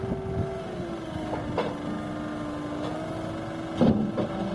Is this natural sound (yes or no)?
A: yes